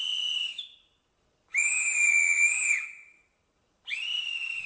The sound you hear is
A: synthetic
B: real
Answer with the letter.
A